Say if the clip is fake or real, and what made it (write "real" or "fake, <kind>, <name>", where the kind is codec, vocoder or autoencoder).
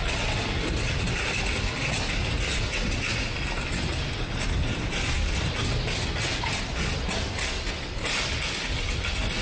real